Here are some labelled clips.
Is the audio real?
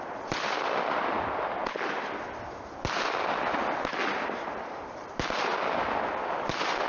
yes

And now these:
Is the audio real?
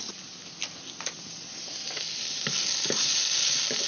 yes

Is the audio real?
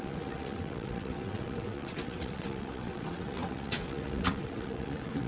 no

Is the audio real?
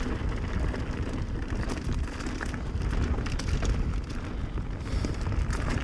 yes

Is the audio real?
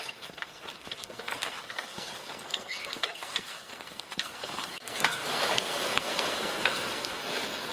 no